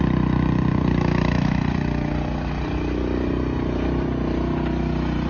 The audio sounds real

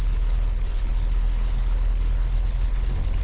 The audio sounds fake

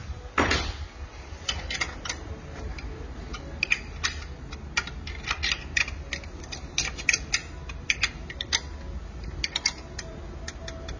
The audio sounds real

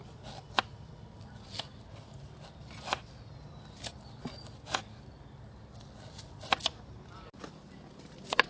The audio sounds real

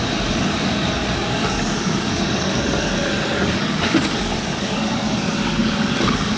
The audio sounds fake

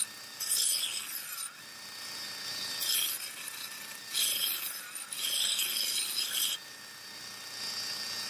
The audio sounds real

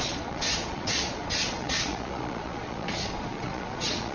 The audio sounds fake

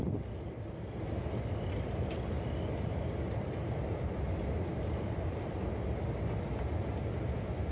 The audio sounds real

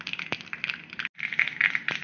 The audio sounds real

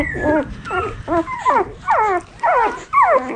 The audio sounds real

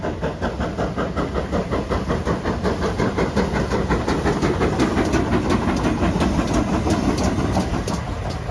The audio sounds real